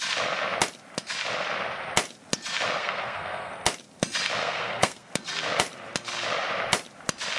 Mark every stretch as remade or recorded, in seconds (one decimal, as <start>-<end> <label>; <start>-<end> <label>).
0.0-2.8 recorded; 2.8-3.5 remade; 3.5-4.4 recorded; 4.4-5.1 remade; 5.1-7.4 recorded